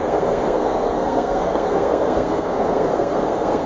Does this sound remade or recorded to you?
remade